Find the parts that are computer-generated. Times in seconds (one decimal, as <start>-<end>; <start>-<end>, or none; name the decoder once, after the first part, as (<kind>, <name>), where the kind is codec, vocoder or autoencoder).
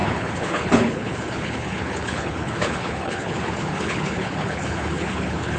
0.0-5.6 (codec, HILCodec)